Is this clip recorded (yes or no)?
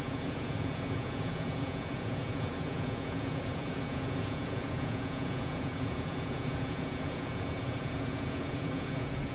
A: no